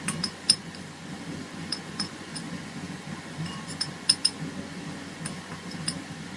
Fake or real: fake